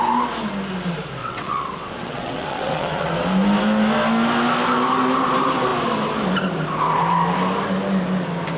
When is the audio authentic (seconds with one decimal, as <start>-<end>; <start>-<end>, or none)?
0.0-1.2; 3.1-8.6